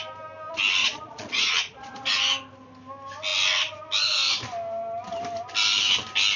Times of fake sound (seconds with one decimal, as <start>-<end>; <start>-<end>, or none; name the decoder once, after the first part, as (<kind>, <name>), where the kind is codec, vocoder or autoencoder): 0.8-2.1 (vocoder, Vocos)

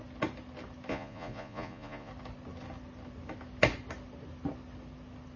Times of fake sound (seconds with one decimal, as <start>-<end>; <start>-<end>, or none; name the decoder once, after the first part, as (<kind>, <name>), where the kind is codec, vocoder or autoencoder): 0.9-2.1 (vocoder, Vocos)

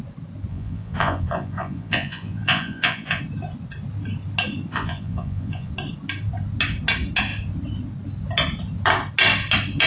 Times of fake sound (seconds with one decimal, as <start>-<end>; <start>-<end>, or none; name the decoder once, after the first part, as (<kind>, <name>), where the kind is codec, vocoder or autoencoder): 0.5-3.2 (vocoder, Vocos); 4.7-5.7

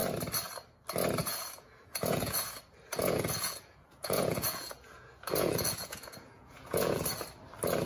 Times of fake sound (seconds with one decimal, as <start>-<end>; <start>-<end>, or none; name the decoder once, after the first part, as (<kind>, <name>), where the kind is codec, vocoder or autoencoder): 1.2-2.6 (vocoder, Vocos); 3.0-7.0

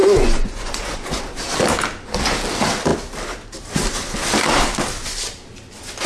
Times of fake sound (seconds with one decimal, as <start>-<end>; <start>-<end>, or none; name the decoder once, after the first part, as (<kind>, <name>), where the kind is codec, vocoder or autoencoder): 0.0-1.2 (vocoder, Vocos)

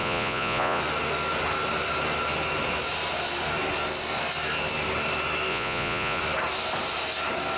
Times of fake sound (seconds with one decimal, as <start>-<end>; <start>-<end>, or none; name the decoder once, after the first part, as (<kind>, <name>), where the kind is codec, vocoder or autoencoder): 0.0-0.8 (vocoder, Vocos); 5.5-6.2

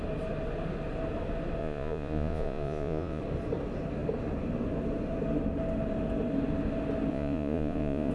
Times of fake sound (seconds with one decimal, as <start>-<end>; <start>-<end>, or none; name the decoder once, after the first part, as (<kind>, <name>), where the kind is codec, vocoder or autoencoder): 1.6-3.2 (vocoder, Vocos); 7.1-8.1